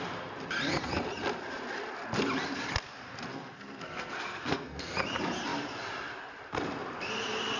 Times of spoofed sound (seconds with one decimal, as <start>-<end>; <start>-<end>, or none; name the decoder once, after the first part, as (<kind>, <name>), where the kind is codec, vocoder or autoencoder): 3.3-4.9 (codec, SNAC)